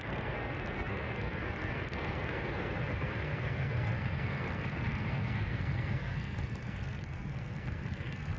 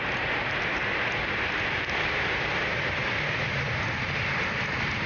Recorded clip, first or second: second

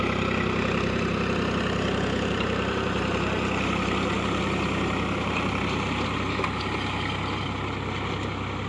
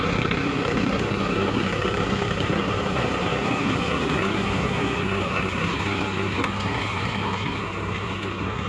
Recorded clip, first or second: first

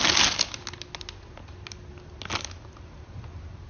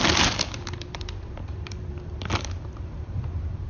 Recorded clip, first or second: first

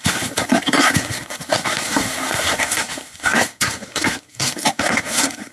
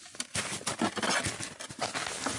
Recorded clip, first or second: second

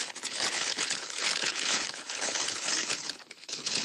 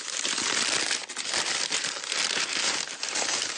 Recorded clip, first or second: second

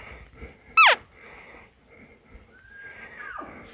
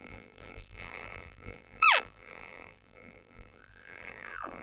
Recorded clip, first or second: first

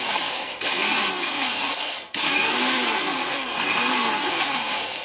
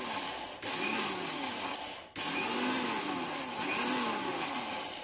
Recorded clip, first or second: second